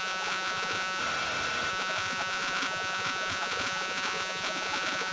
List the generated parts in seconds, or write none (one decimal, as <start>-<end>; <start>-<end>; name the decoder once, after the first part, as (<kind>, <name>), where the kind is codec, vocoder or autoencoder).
0.0-1.0 (vocoder, Vocos); 1.7-5.1